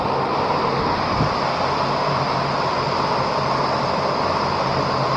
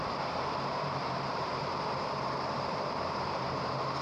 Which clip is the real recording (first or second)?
first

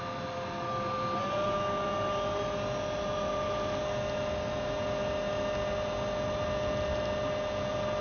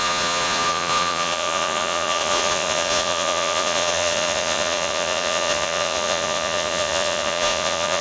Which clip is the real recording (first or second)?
first